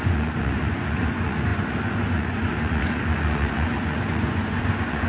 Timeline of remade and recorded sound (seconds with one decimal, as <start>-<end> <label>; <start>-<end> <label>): 0.0-5.1 remade